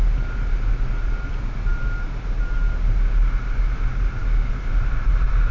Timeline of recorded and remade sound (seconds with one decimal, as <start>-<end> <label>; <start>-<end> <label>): 0.0-5.5 recorded